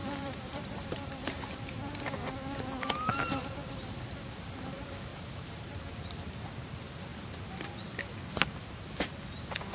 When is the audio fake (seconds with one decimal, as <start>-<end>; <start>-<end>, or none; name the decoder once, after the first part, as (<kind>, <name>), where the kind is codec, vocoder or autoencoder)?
0.0-2.1 (vocoder, BigVGAN v2); 5.1-5.8